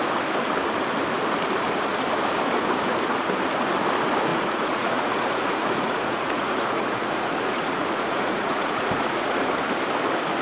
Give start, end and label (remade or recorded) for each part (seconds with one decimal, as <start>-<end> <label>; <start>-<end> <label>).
0.0-4.3 recorded; 4.3-9.5 remade; 9.5-10.4 recorded